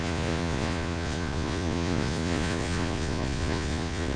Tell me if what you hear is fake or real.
fake